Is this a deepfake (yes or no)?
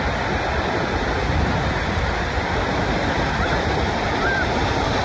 no